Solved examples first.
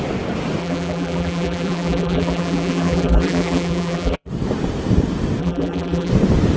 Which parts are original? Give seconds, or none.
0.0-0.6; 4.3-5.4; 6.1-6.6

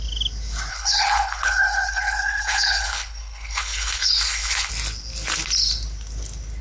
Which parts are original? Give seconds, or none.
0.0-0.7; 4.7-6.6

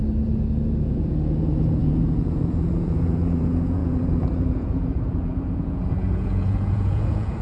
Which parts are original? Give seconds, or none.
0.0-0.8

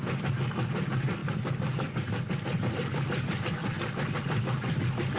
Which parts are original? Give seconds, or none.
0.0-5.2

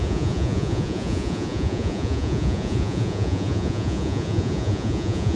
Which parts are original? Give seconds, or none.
none

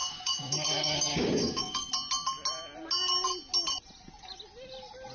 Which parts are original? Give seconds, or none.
1.9-5.1